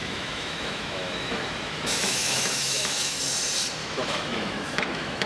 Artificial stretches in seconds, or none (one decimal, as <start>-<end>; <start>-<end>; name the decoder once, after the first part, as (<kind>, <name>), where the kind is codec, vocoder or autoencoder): 0.0-3.2 (autoencoder, DAC-VAE); 3.8-5.3